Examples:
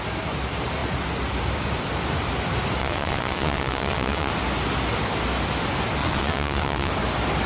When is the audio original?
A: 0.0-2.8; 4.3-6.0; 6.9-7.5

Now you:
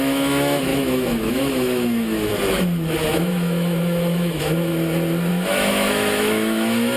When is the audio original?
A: 2.3-3.1; 4.7-5.3

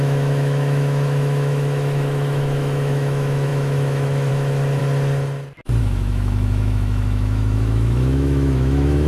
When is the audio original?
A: 4.8-5.8

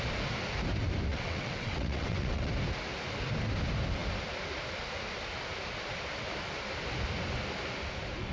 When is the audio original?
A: 0.0-1.1; 2.5-8.3

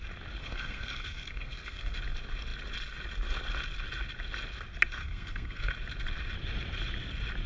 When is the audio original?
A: 0.0-0.4; 2.0-5.0; 5.7-7.5

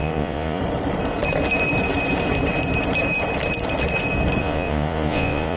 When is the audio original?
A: 0.6-4.4

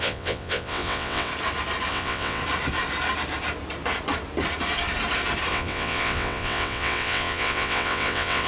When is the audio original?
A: 1.3-1.9; 2.4-5.5